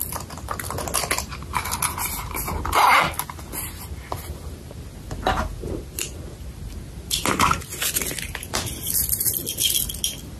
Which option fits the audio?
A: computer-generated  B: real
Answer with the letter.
B